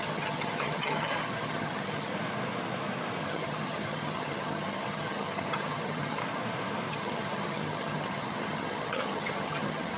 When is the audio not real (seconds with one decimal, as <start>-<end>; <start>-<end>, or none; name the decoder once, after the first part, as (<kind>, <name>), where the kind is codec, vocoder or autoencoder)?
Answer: 0.0-2.1 (vocoder, HiFi-GAN); 3.2-6.2; 6.9-10.0